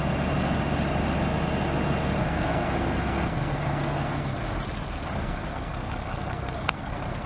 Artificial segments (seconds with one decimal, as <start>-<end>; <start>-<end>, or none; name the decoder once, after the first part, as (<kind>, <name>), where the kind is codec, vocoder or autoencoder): 2.2-4.4 (codec, SNAC); 5.2-7.3